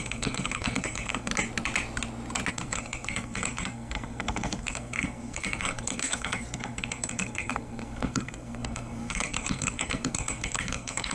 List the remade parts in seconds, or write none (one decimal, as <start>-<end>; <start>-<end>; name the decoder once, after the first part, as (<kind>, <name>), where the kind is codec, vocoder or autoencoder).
0.0-1.3 (codec, SNAC); 2.5-11.1